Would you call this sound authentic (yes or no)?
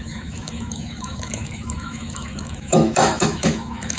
no